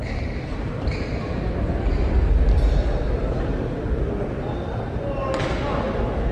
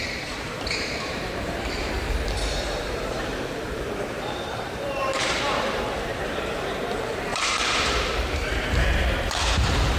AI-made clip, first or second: second